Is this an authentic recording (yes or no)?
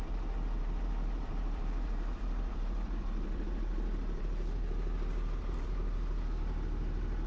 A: no